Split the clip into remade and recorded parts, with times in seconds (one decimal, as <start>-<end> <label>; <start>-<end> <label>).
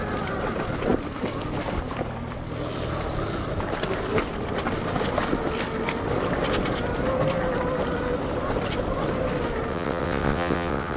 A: 0.0-9.7 recorded; 9.7-11.0 remade